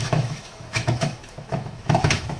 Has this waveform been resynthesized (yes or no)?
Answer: yes